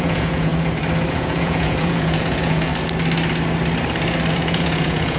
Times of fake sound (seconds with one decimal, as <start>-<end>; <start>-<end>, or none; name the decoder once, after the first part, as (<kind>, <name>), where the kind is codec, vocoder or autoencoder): 0.0-0.5 (vocoder, Vocos); 1.1-2.7; 4.3-5.2